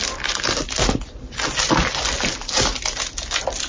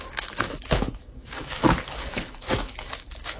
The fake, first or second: second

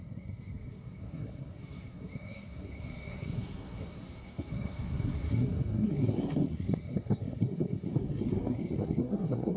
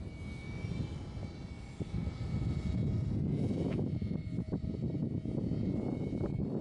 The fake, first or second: first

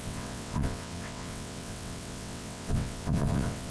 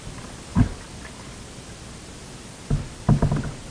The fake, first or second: first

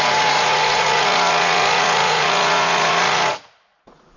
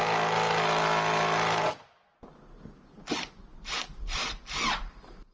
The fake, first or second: first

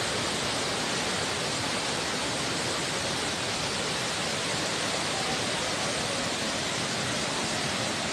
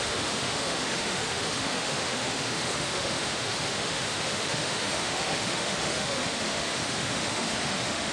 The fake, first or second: second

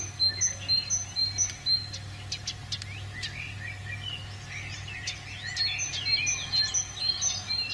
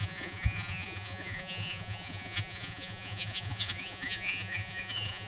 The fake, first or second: second